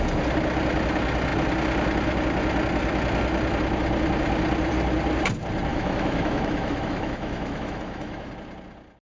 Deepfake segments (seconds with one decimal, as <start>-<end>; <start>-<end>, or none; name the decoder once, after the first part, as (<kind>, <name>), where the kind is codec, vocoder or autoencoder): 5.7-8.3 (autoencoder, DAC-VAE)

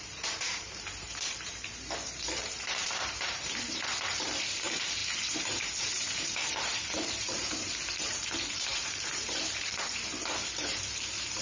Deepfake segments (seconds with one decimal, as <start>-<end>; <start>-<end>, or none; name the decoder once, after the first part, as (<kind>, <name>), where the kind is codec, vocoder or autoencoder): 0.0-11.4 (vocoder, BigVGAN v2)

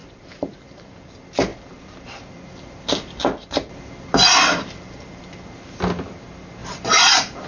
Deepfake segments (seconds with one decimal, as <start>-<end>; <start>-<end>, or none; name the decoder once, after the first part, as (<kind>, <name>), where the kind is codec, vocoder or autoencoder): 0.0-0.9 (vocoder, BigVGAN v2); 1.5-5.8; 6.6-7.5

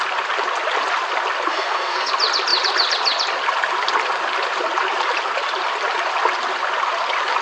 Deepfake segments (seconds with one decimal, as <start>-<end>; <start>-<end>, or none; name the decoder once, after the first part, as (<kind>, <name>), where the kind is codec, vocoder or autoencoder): 1.5-2.1 (codec, SNAC)

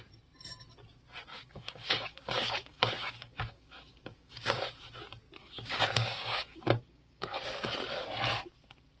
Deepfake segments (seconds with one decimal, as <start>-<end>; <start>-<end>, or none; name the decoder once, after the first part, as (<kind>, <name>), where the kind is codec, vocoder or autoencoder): 1.3-4.6 (codec, DAC); 5.4-7.3

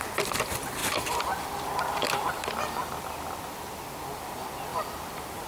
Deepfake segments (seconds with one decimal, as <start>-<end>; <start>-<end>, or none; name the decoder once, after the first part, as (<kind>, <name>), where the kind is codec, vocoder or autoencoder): 0.8-3.4 (vocoder, BigVGAN v2); 4.7-5.5